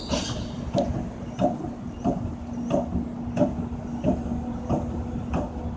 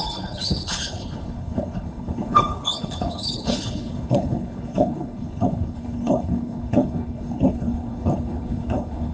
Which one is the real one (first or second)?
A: first